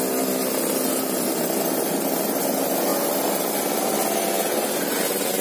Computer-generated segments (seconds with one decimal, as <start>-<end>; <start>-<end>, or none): none